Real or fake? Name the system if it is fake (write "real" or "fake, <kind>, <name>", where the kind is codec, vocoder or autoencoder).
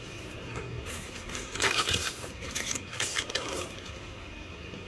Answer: fake, codec, SNAC